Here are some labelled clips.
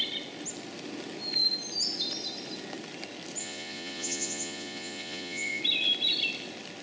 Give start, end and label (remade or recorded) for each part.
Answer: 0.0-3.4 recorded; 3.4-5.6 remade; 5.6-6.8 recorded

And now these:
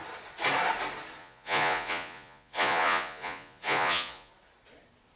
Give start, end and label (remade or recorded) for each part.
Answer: 0.0-1.2 recorded; 1.2-4.3 remade; 4.3-5.2 recorded

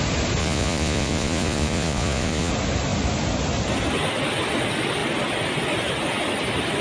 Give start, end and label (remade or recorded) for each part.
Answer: 0.0-0.4 recorded; 0.4-2.5 remade; 2.5-6.8 recorded

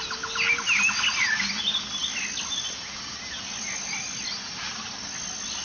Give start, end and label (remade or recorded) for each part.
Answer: 0.0-5.6 recorded

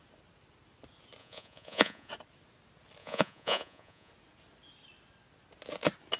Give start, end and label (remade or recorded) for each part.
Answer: 0.0-1.2 recorded; 1.2-2.1 remade; 2.1-3.0 recorded; 3.0-4.1 remade; 4.1-6.2 recorded